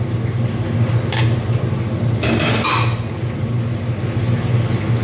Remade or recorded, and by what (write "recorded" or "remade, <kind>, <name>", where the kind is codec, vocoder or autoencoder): recorded